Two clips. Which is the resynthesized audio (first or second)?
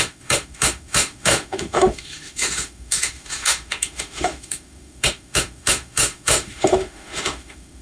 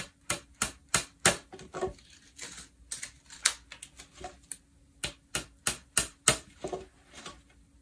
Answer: first